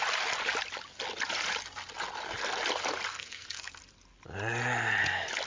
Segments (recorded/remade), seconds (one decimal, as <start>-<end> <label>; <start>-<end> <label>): 0.0-3.1 recorded; 3.1-3.8 remade; 3.8-5.5 recorded